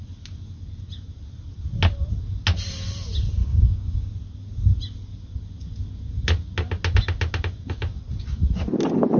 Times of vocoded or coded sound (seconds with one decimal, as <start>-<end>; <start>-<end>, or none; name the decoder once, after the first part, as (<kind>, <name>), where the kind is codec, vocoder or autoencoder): 3.4-4.1 (codec, DAC)